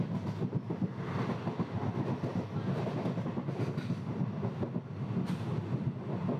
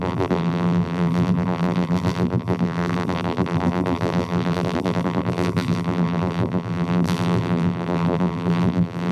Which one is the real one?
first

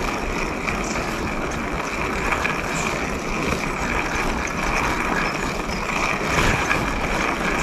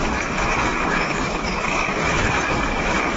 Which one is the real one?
first